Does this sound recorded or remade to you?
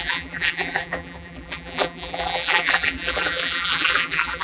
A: remade